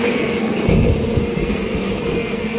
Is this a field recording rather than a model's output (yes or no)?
no